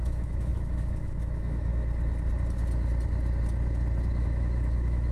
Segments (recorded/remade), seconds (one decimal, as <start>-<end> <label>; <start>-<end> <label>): 0.0-1.7 remade; 1.7-4.2 recorded; 4.2-5.1 remade